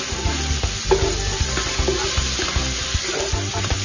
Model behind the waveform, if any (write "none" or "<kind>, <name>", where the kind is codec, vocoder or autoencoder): none